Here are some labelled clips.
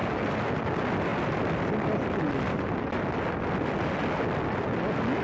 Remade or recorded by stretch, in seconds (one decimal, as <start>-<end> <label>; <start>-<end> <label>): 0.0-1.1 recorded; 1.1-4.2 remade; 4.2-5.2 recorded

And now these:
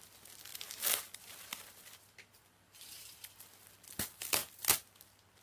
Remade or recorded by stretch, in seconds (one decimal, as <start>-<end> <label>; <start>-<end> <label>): 0.0-5.4 recorded

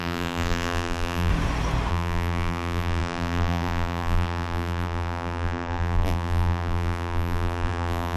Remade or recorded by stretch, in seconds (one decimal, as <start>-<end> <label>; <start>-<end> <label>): 0.0-1.3 remade; 1.3-1.9 recorded; 1.9-8.2 remade

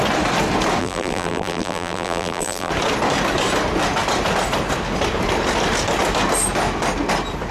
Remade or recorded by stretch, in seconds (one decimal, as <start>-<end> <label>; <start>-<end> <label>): 0.0-0.8 recorded; 0.8-2.7 remade; 2.7-7.5 recorded

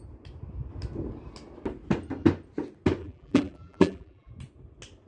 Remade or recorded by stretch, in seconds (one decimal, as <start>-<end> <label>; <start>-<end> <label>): 0.0-3.0 recorded; 3.0-4.3 remade; 4.3-5.1 recorded

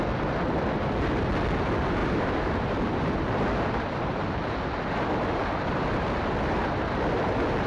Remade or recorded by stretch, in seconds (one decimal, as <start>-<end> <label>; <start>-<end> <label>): 0.0-2.0 recorded; 2.0-2.6 remade; 2.6-7.7 recorded